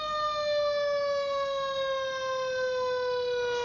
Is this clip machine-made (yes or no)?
no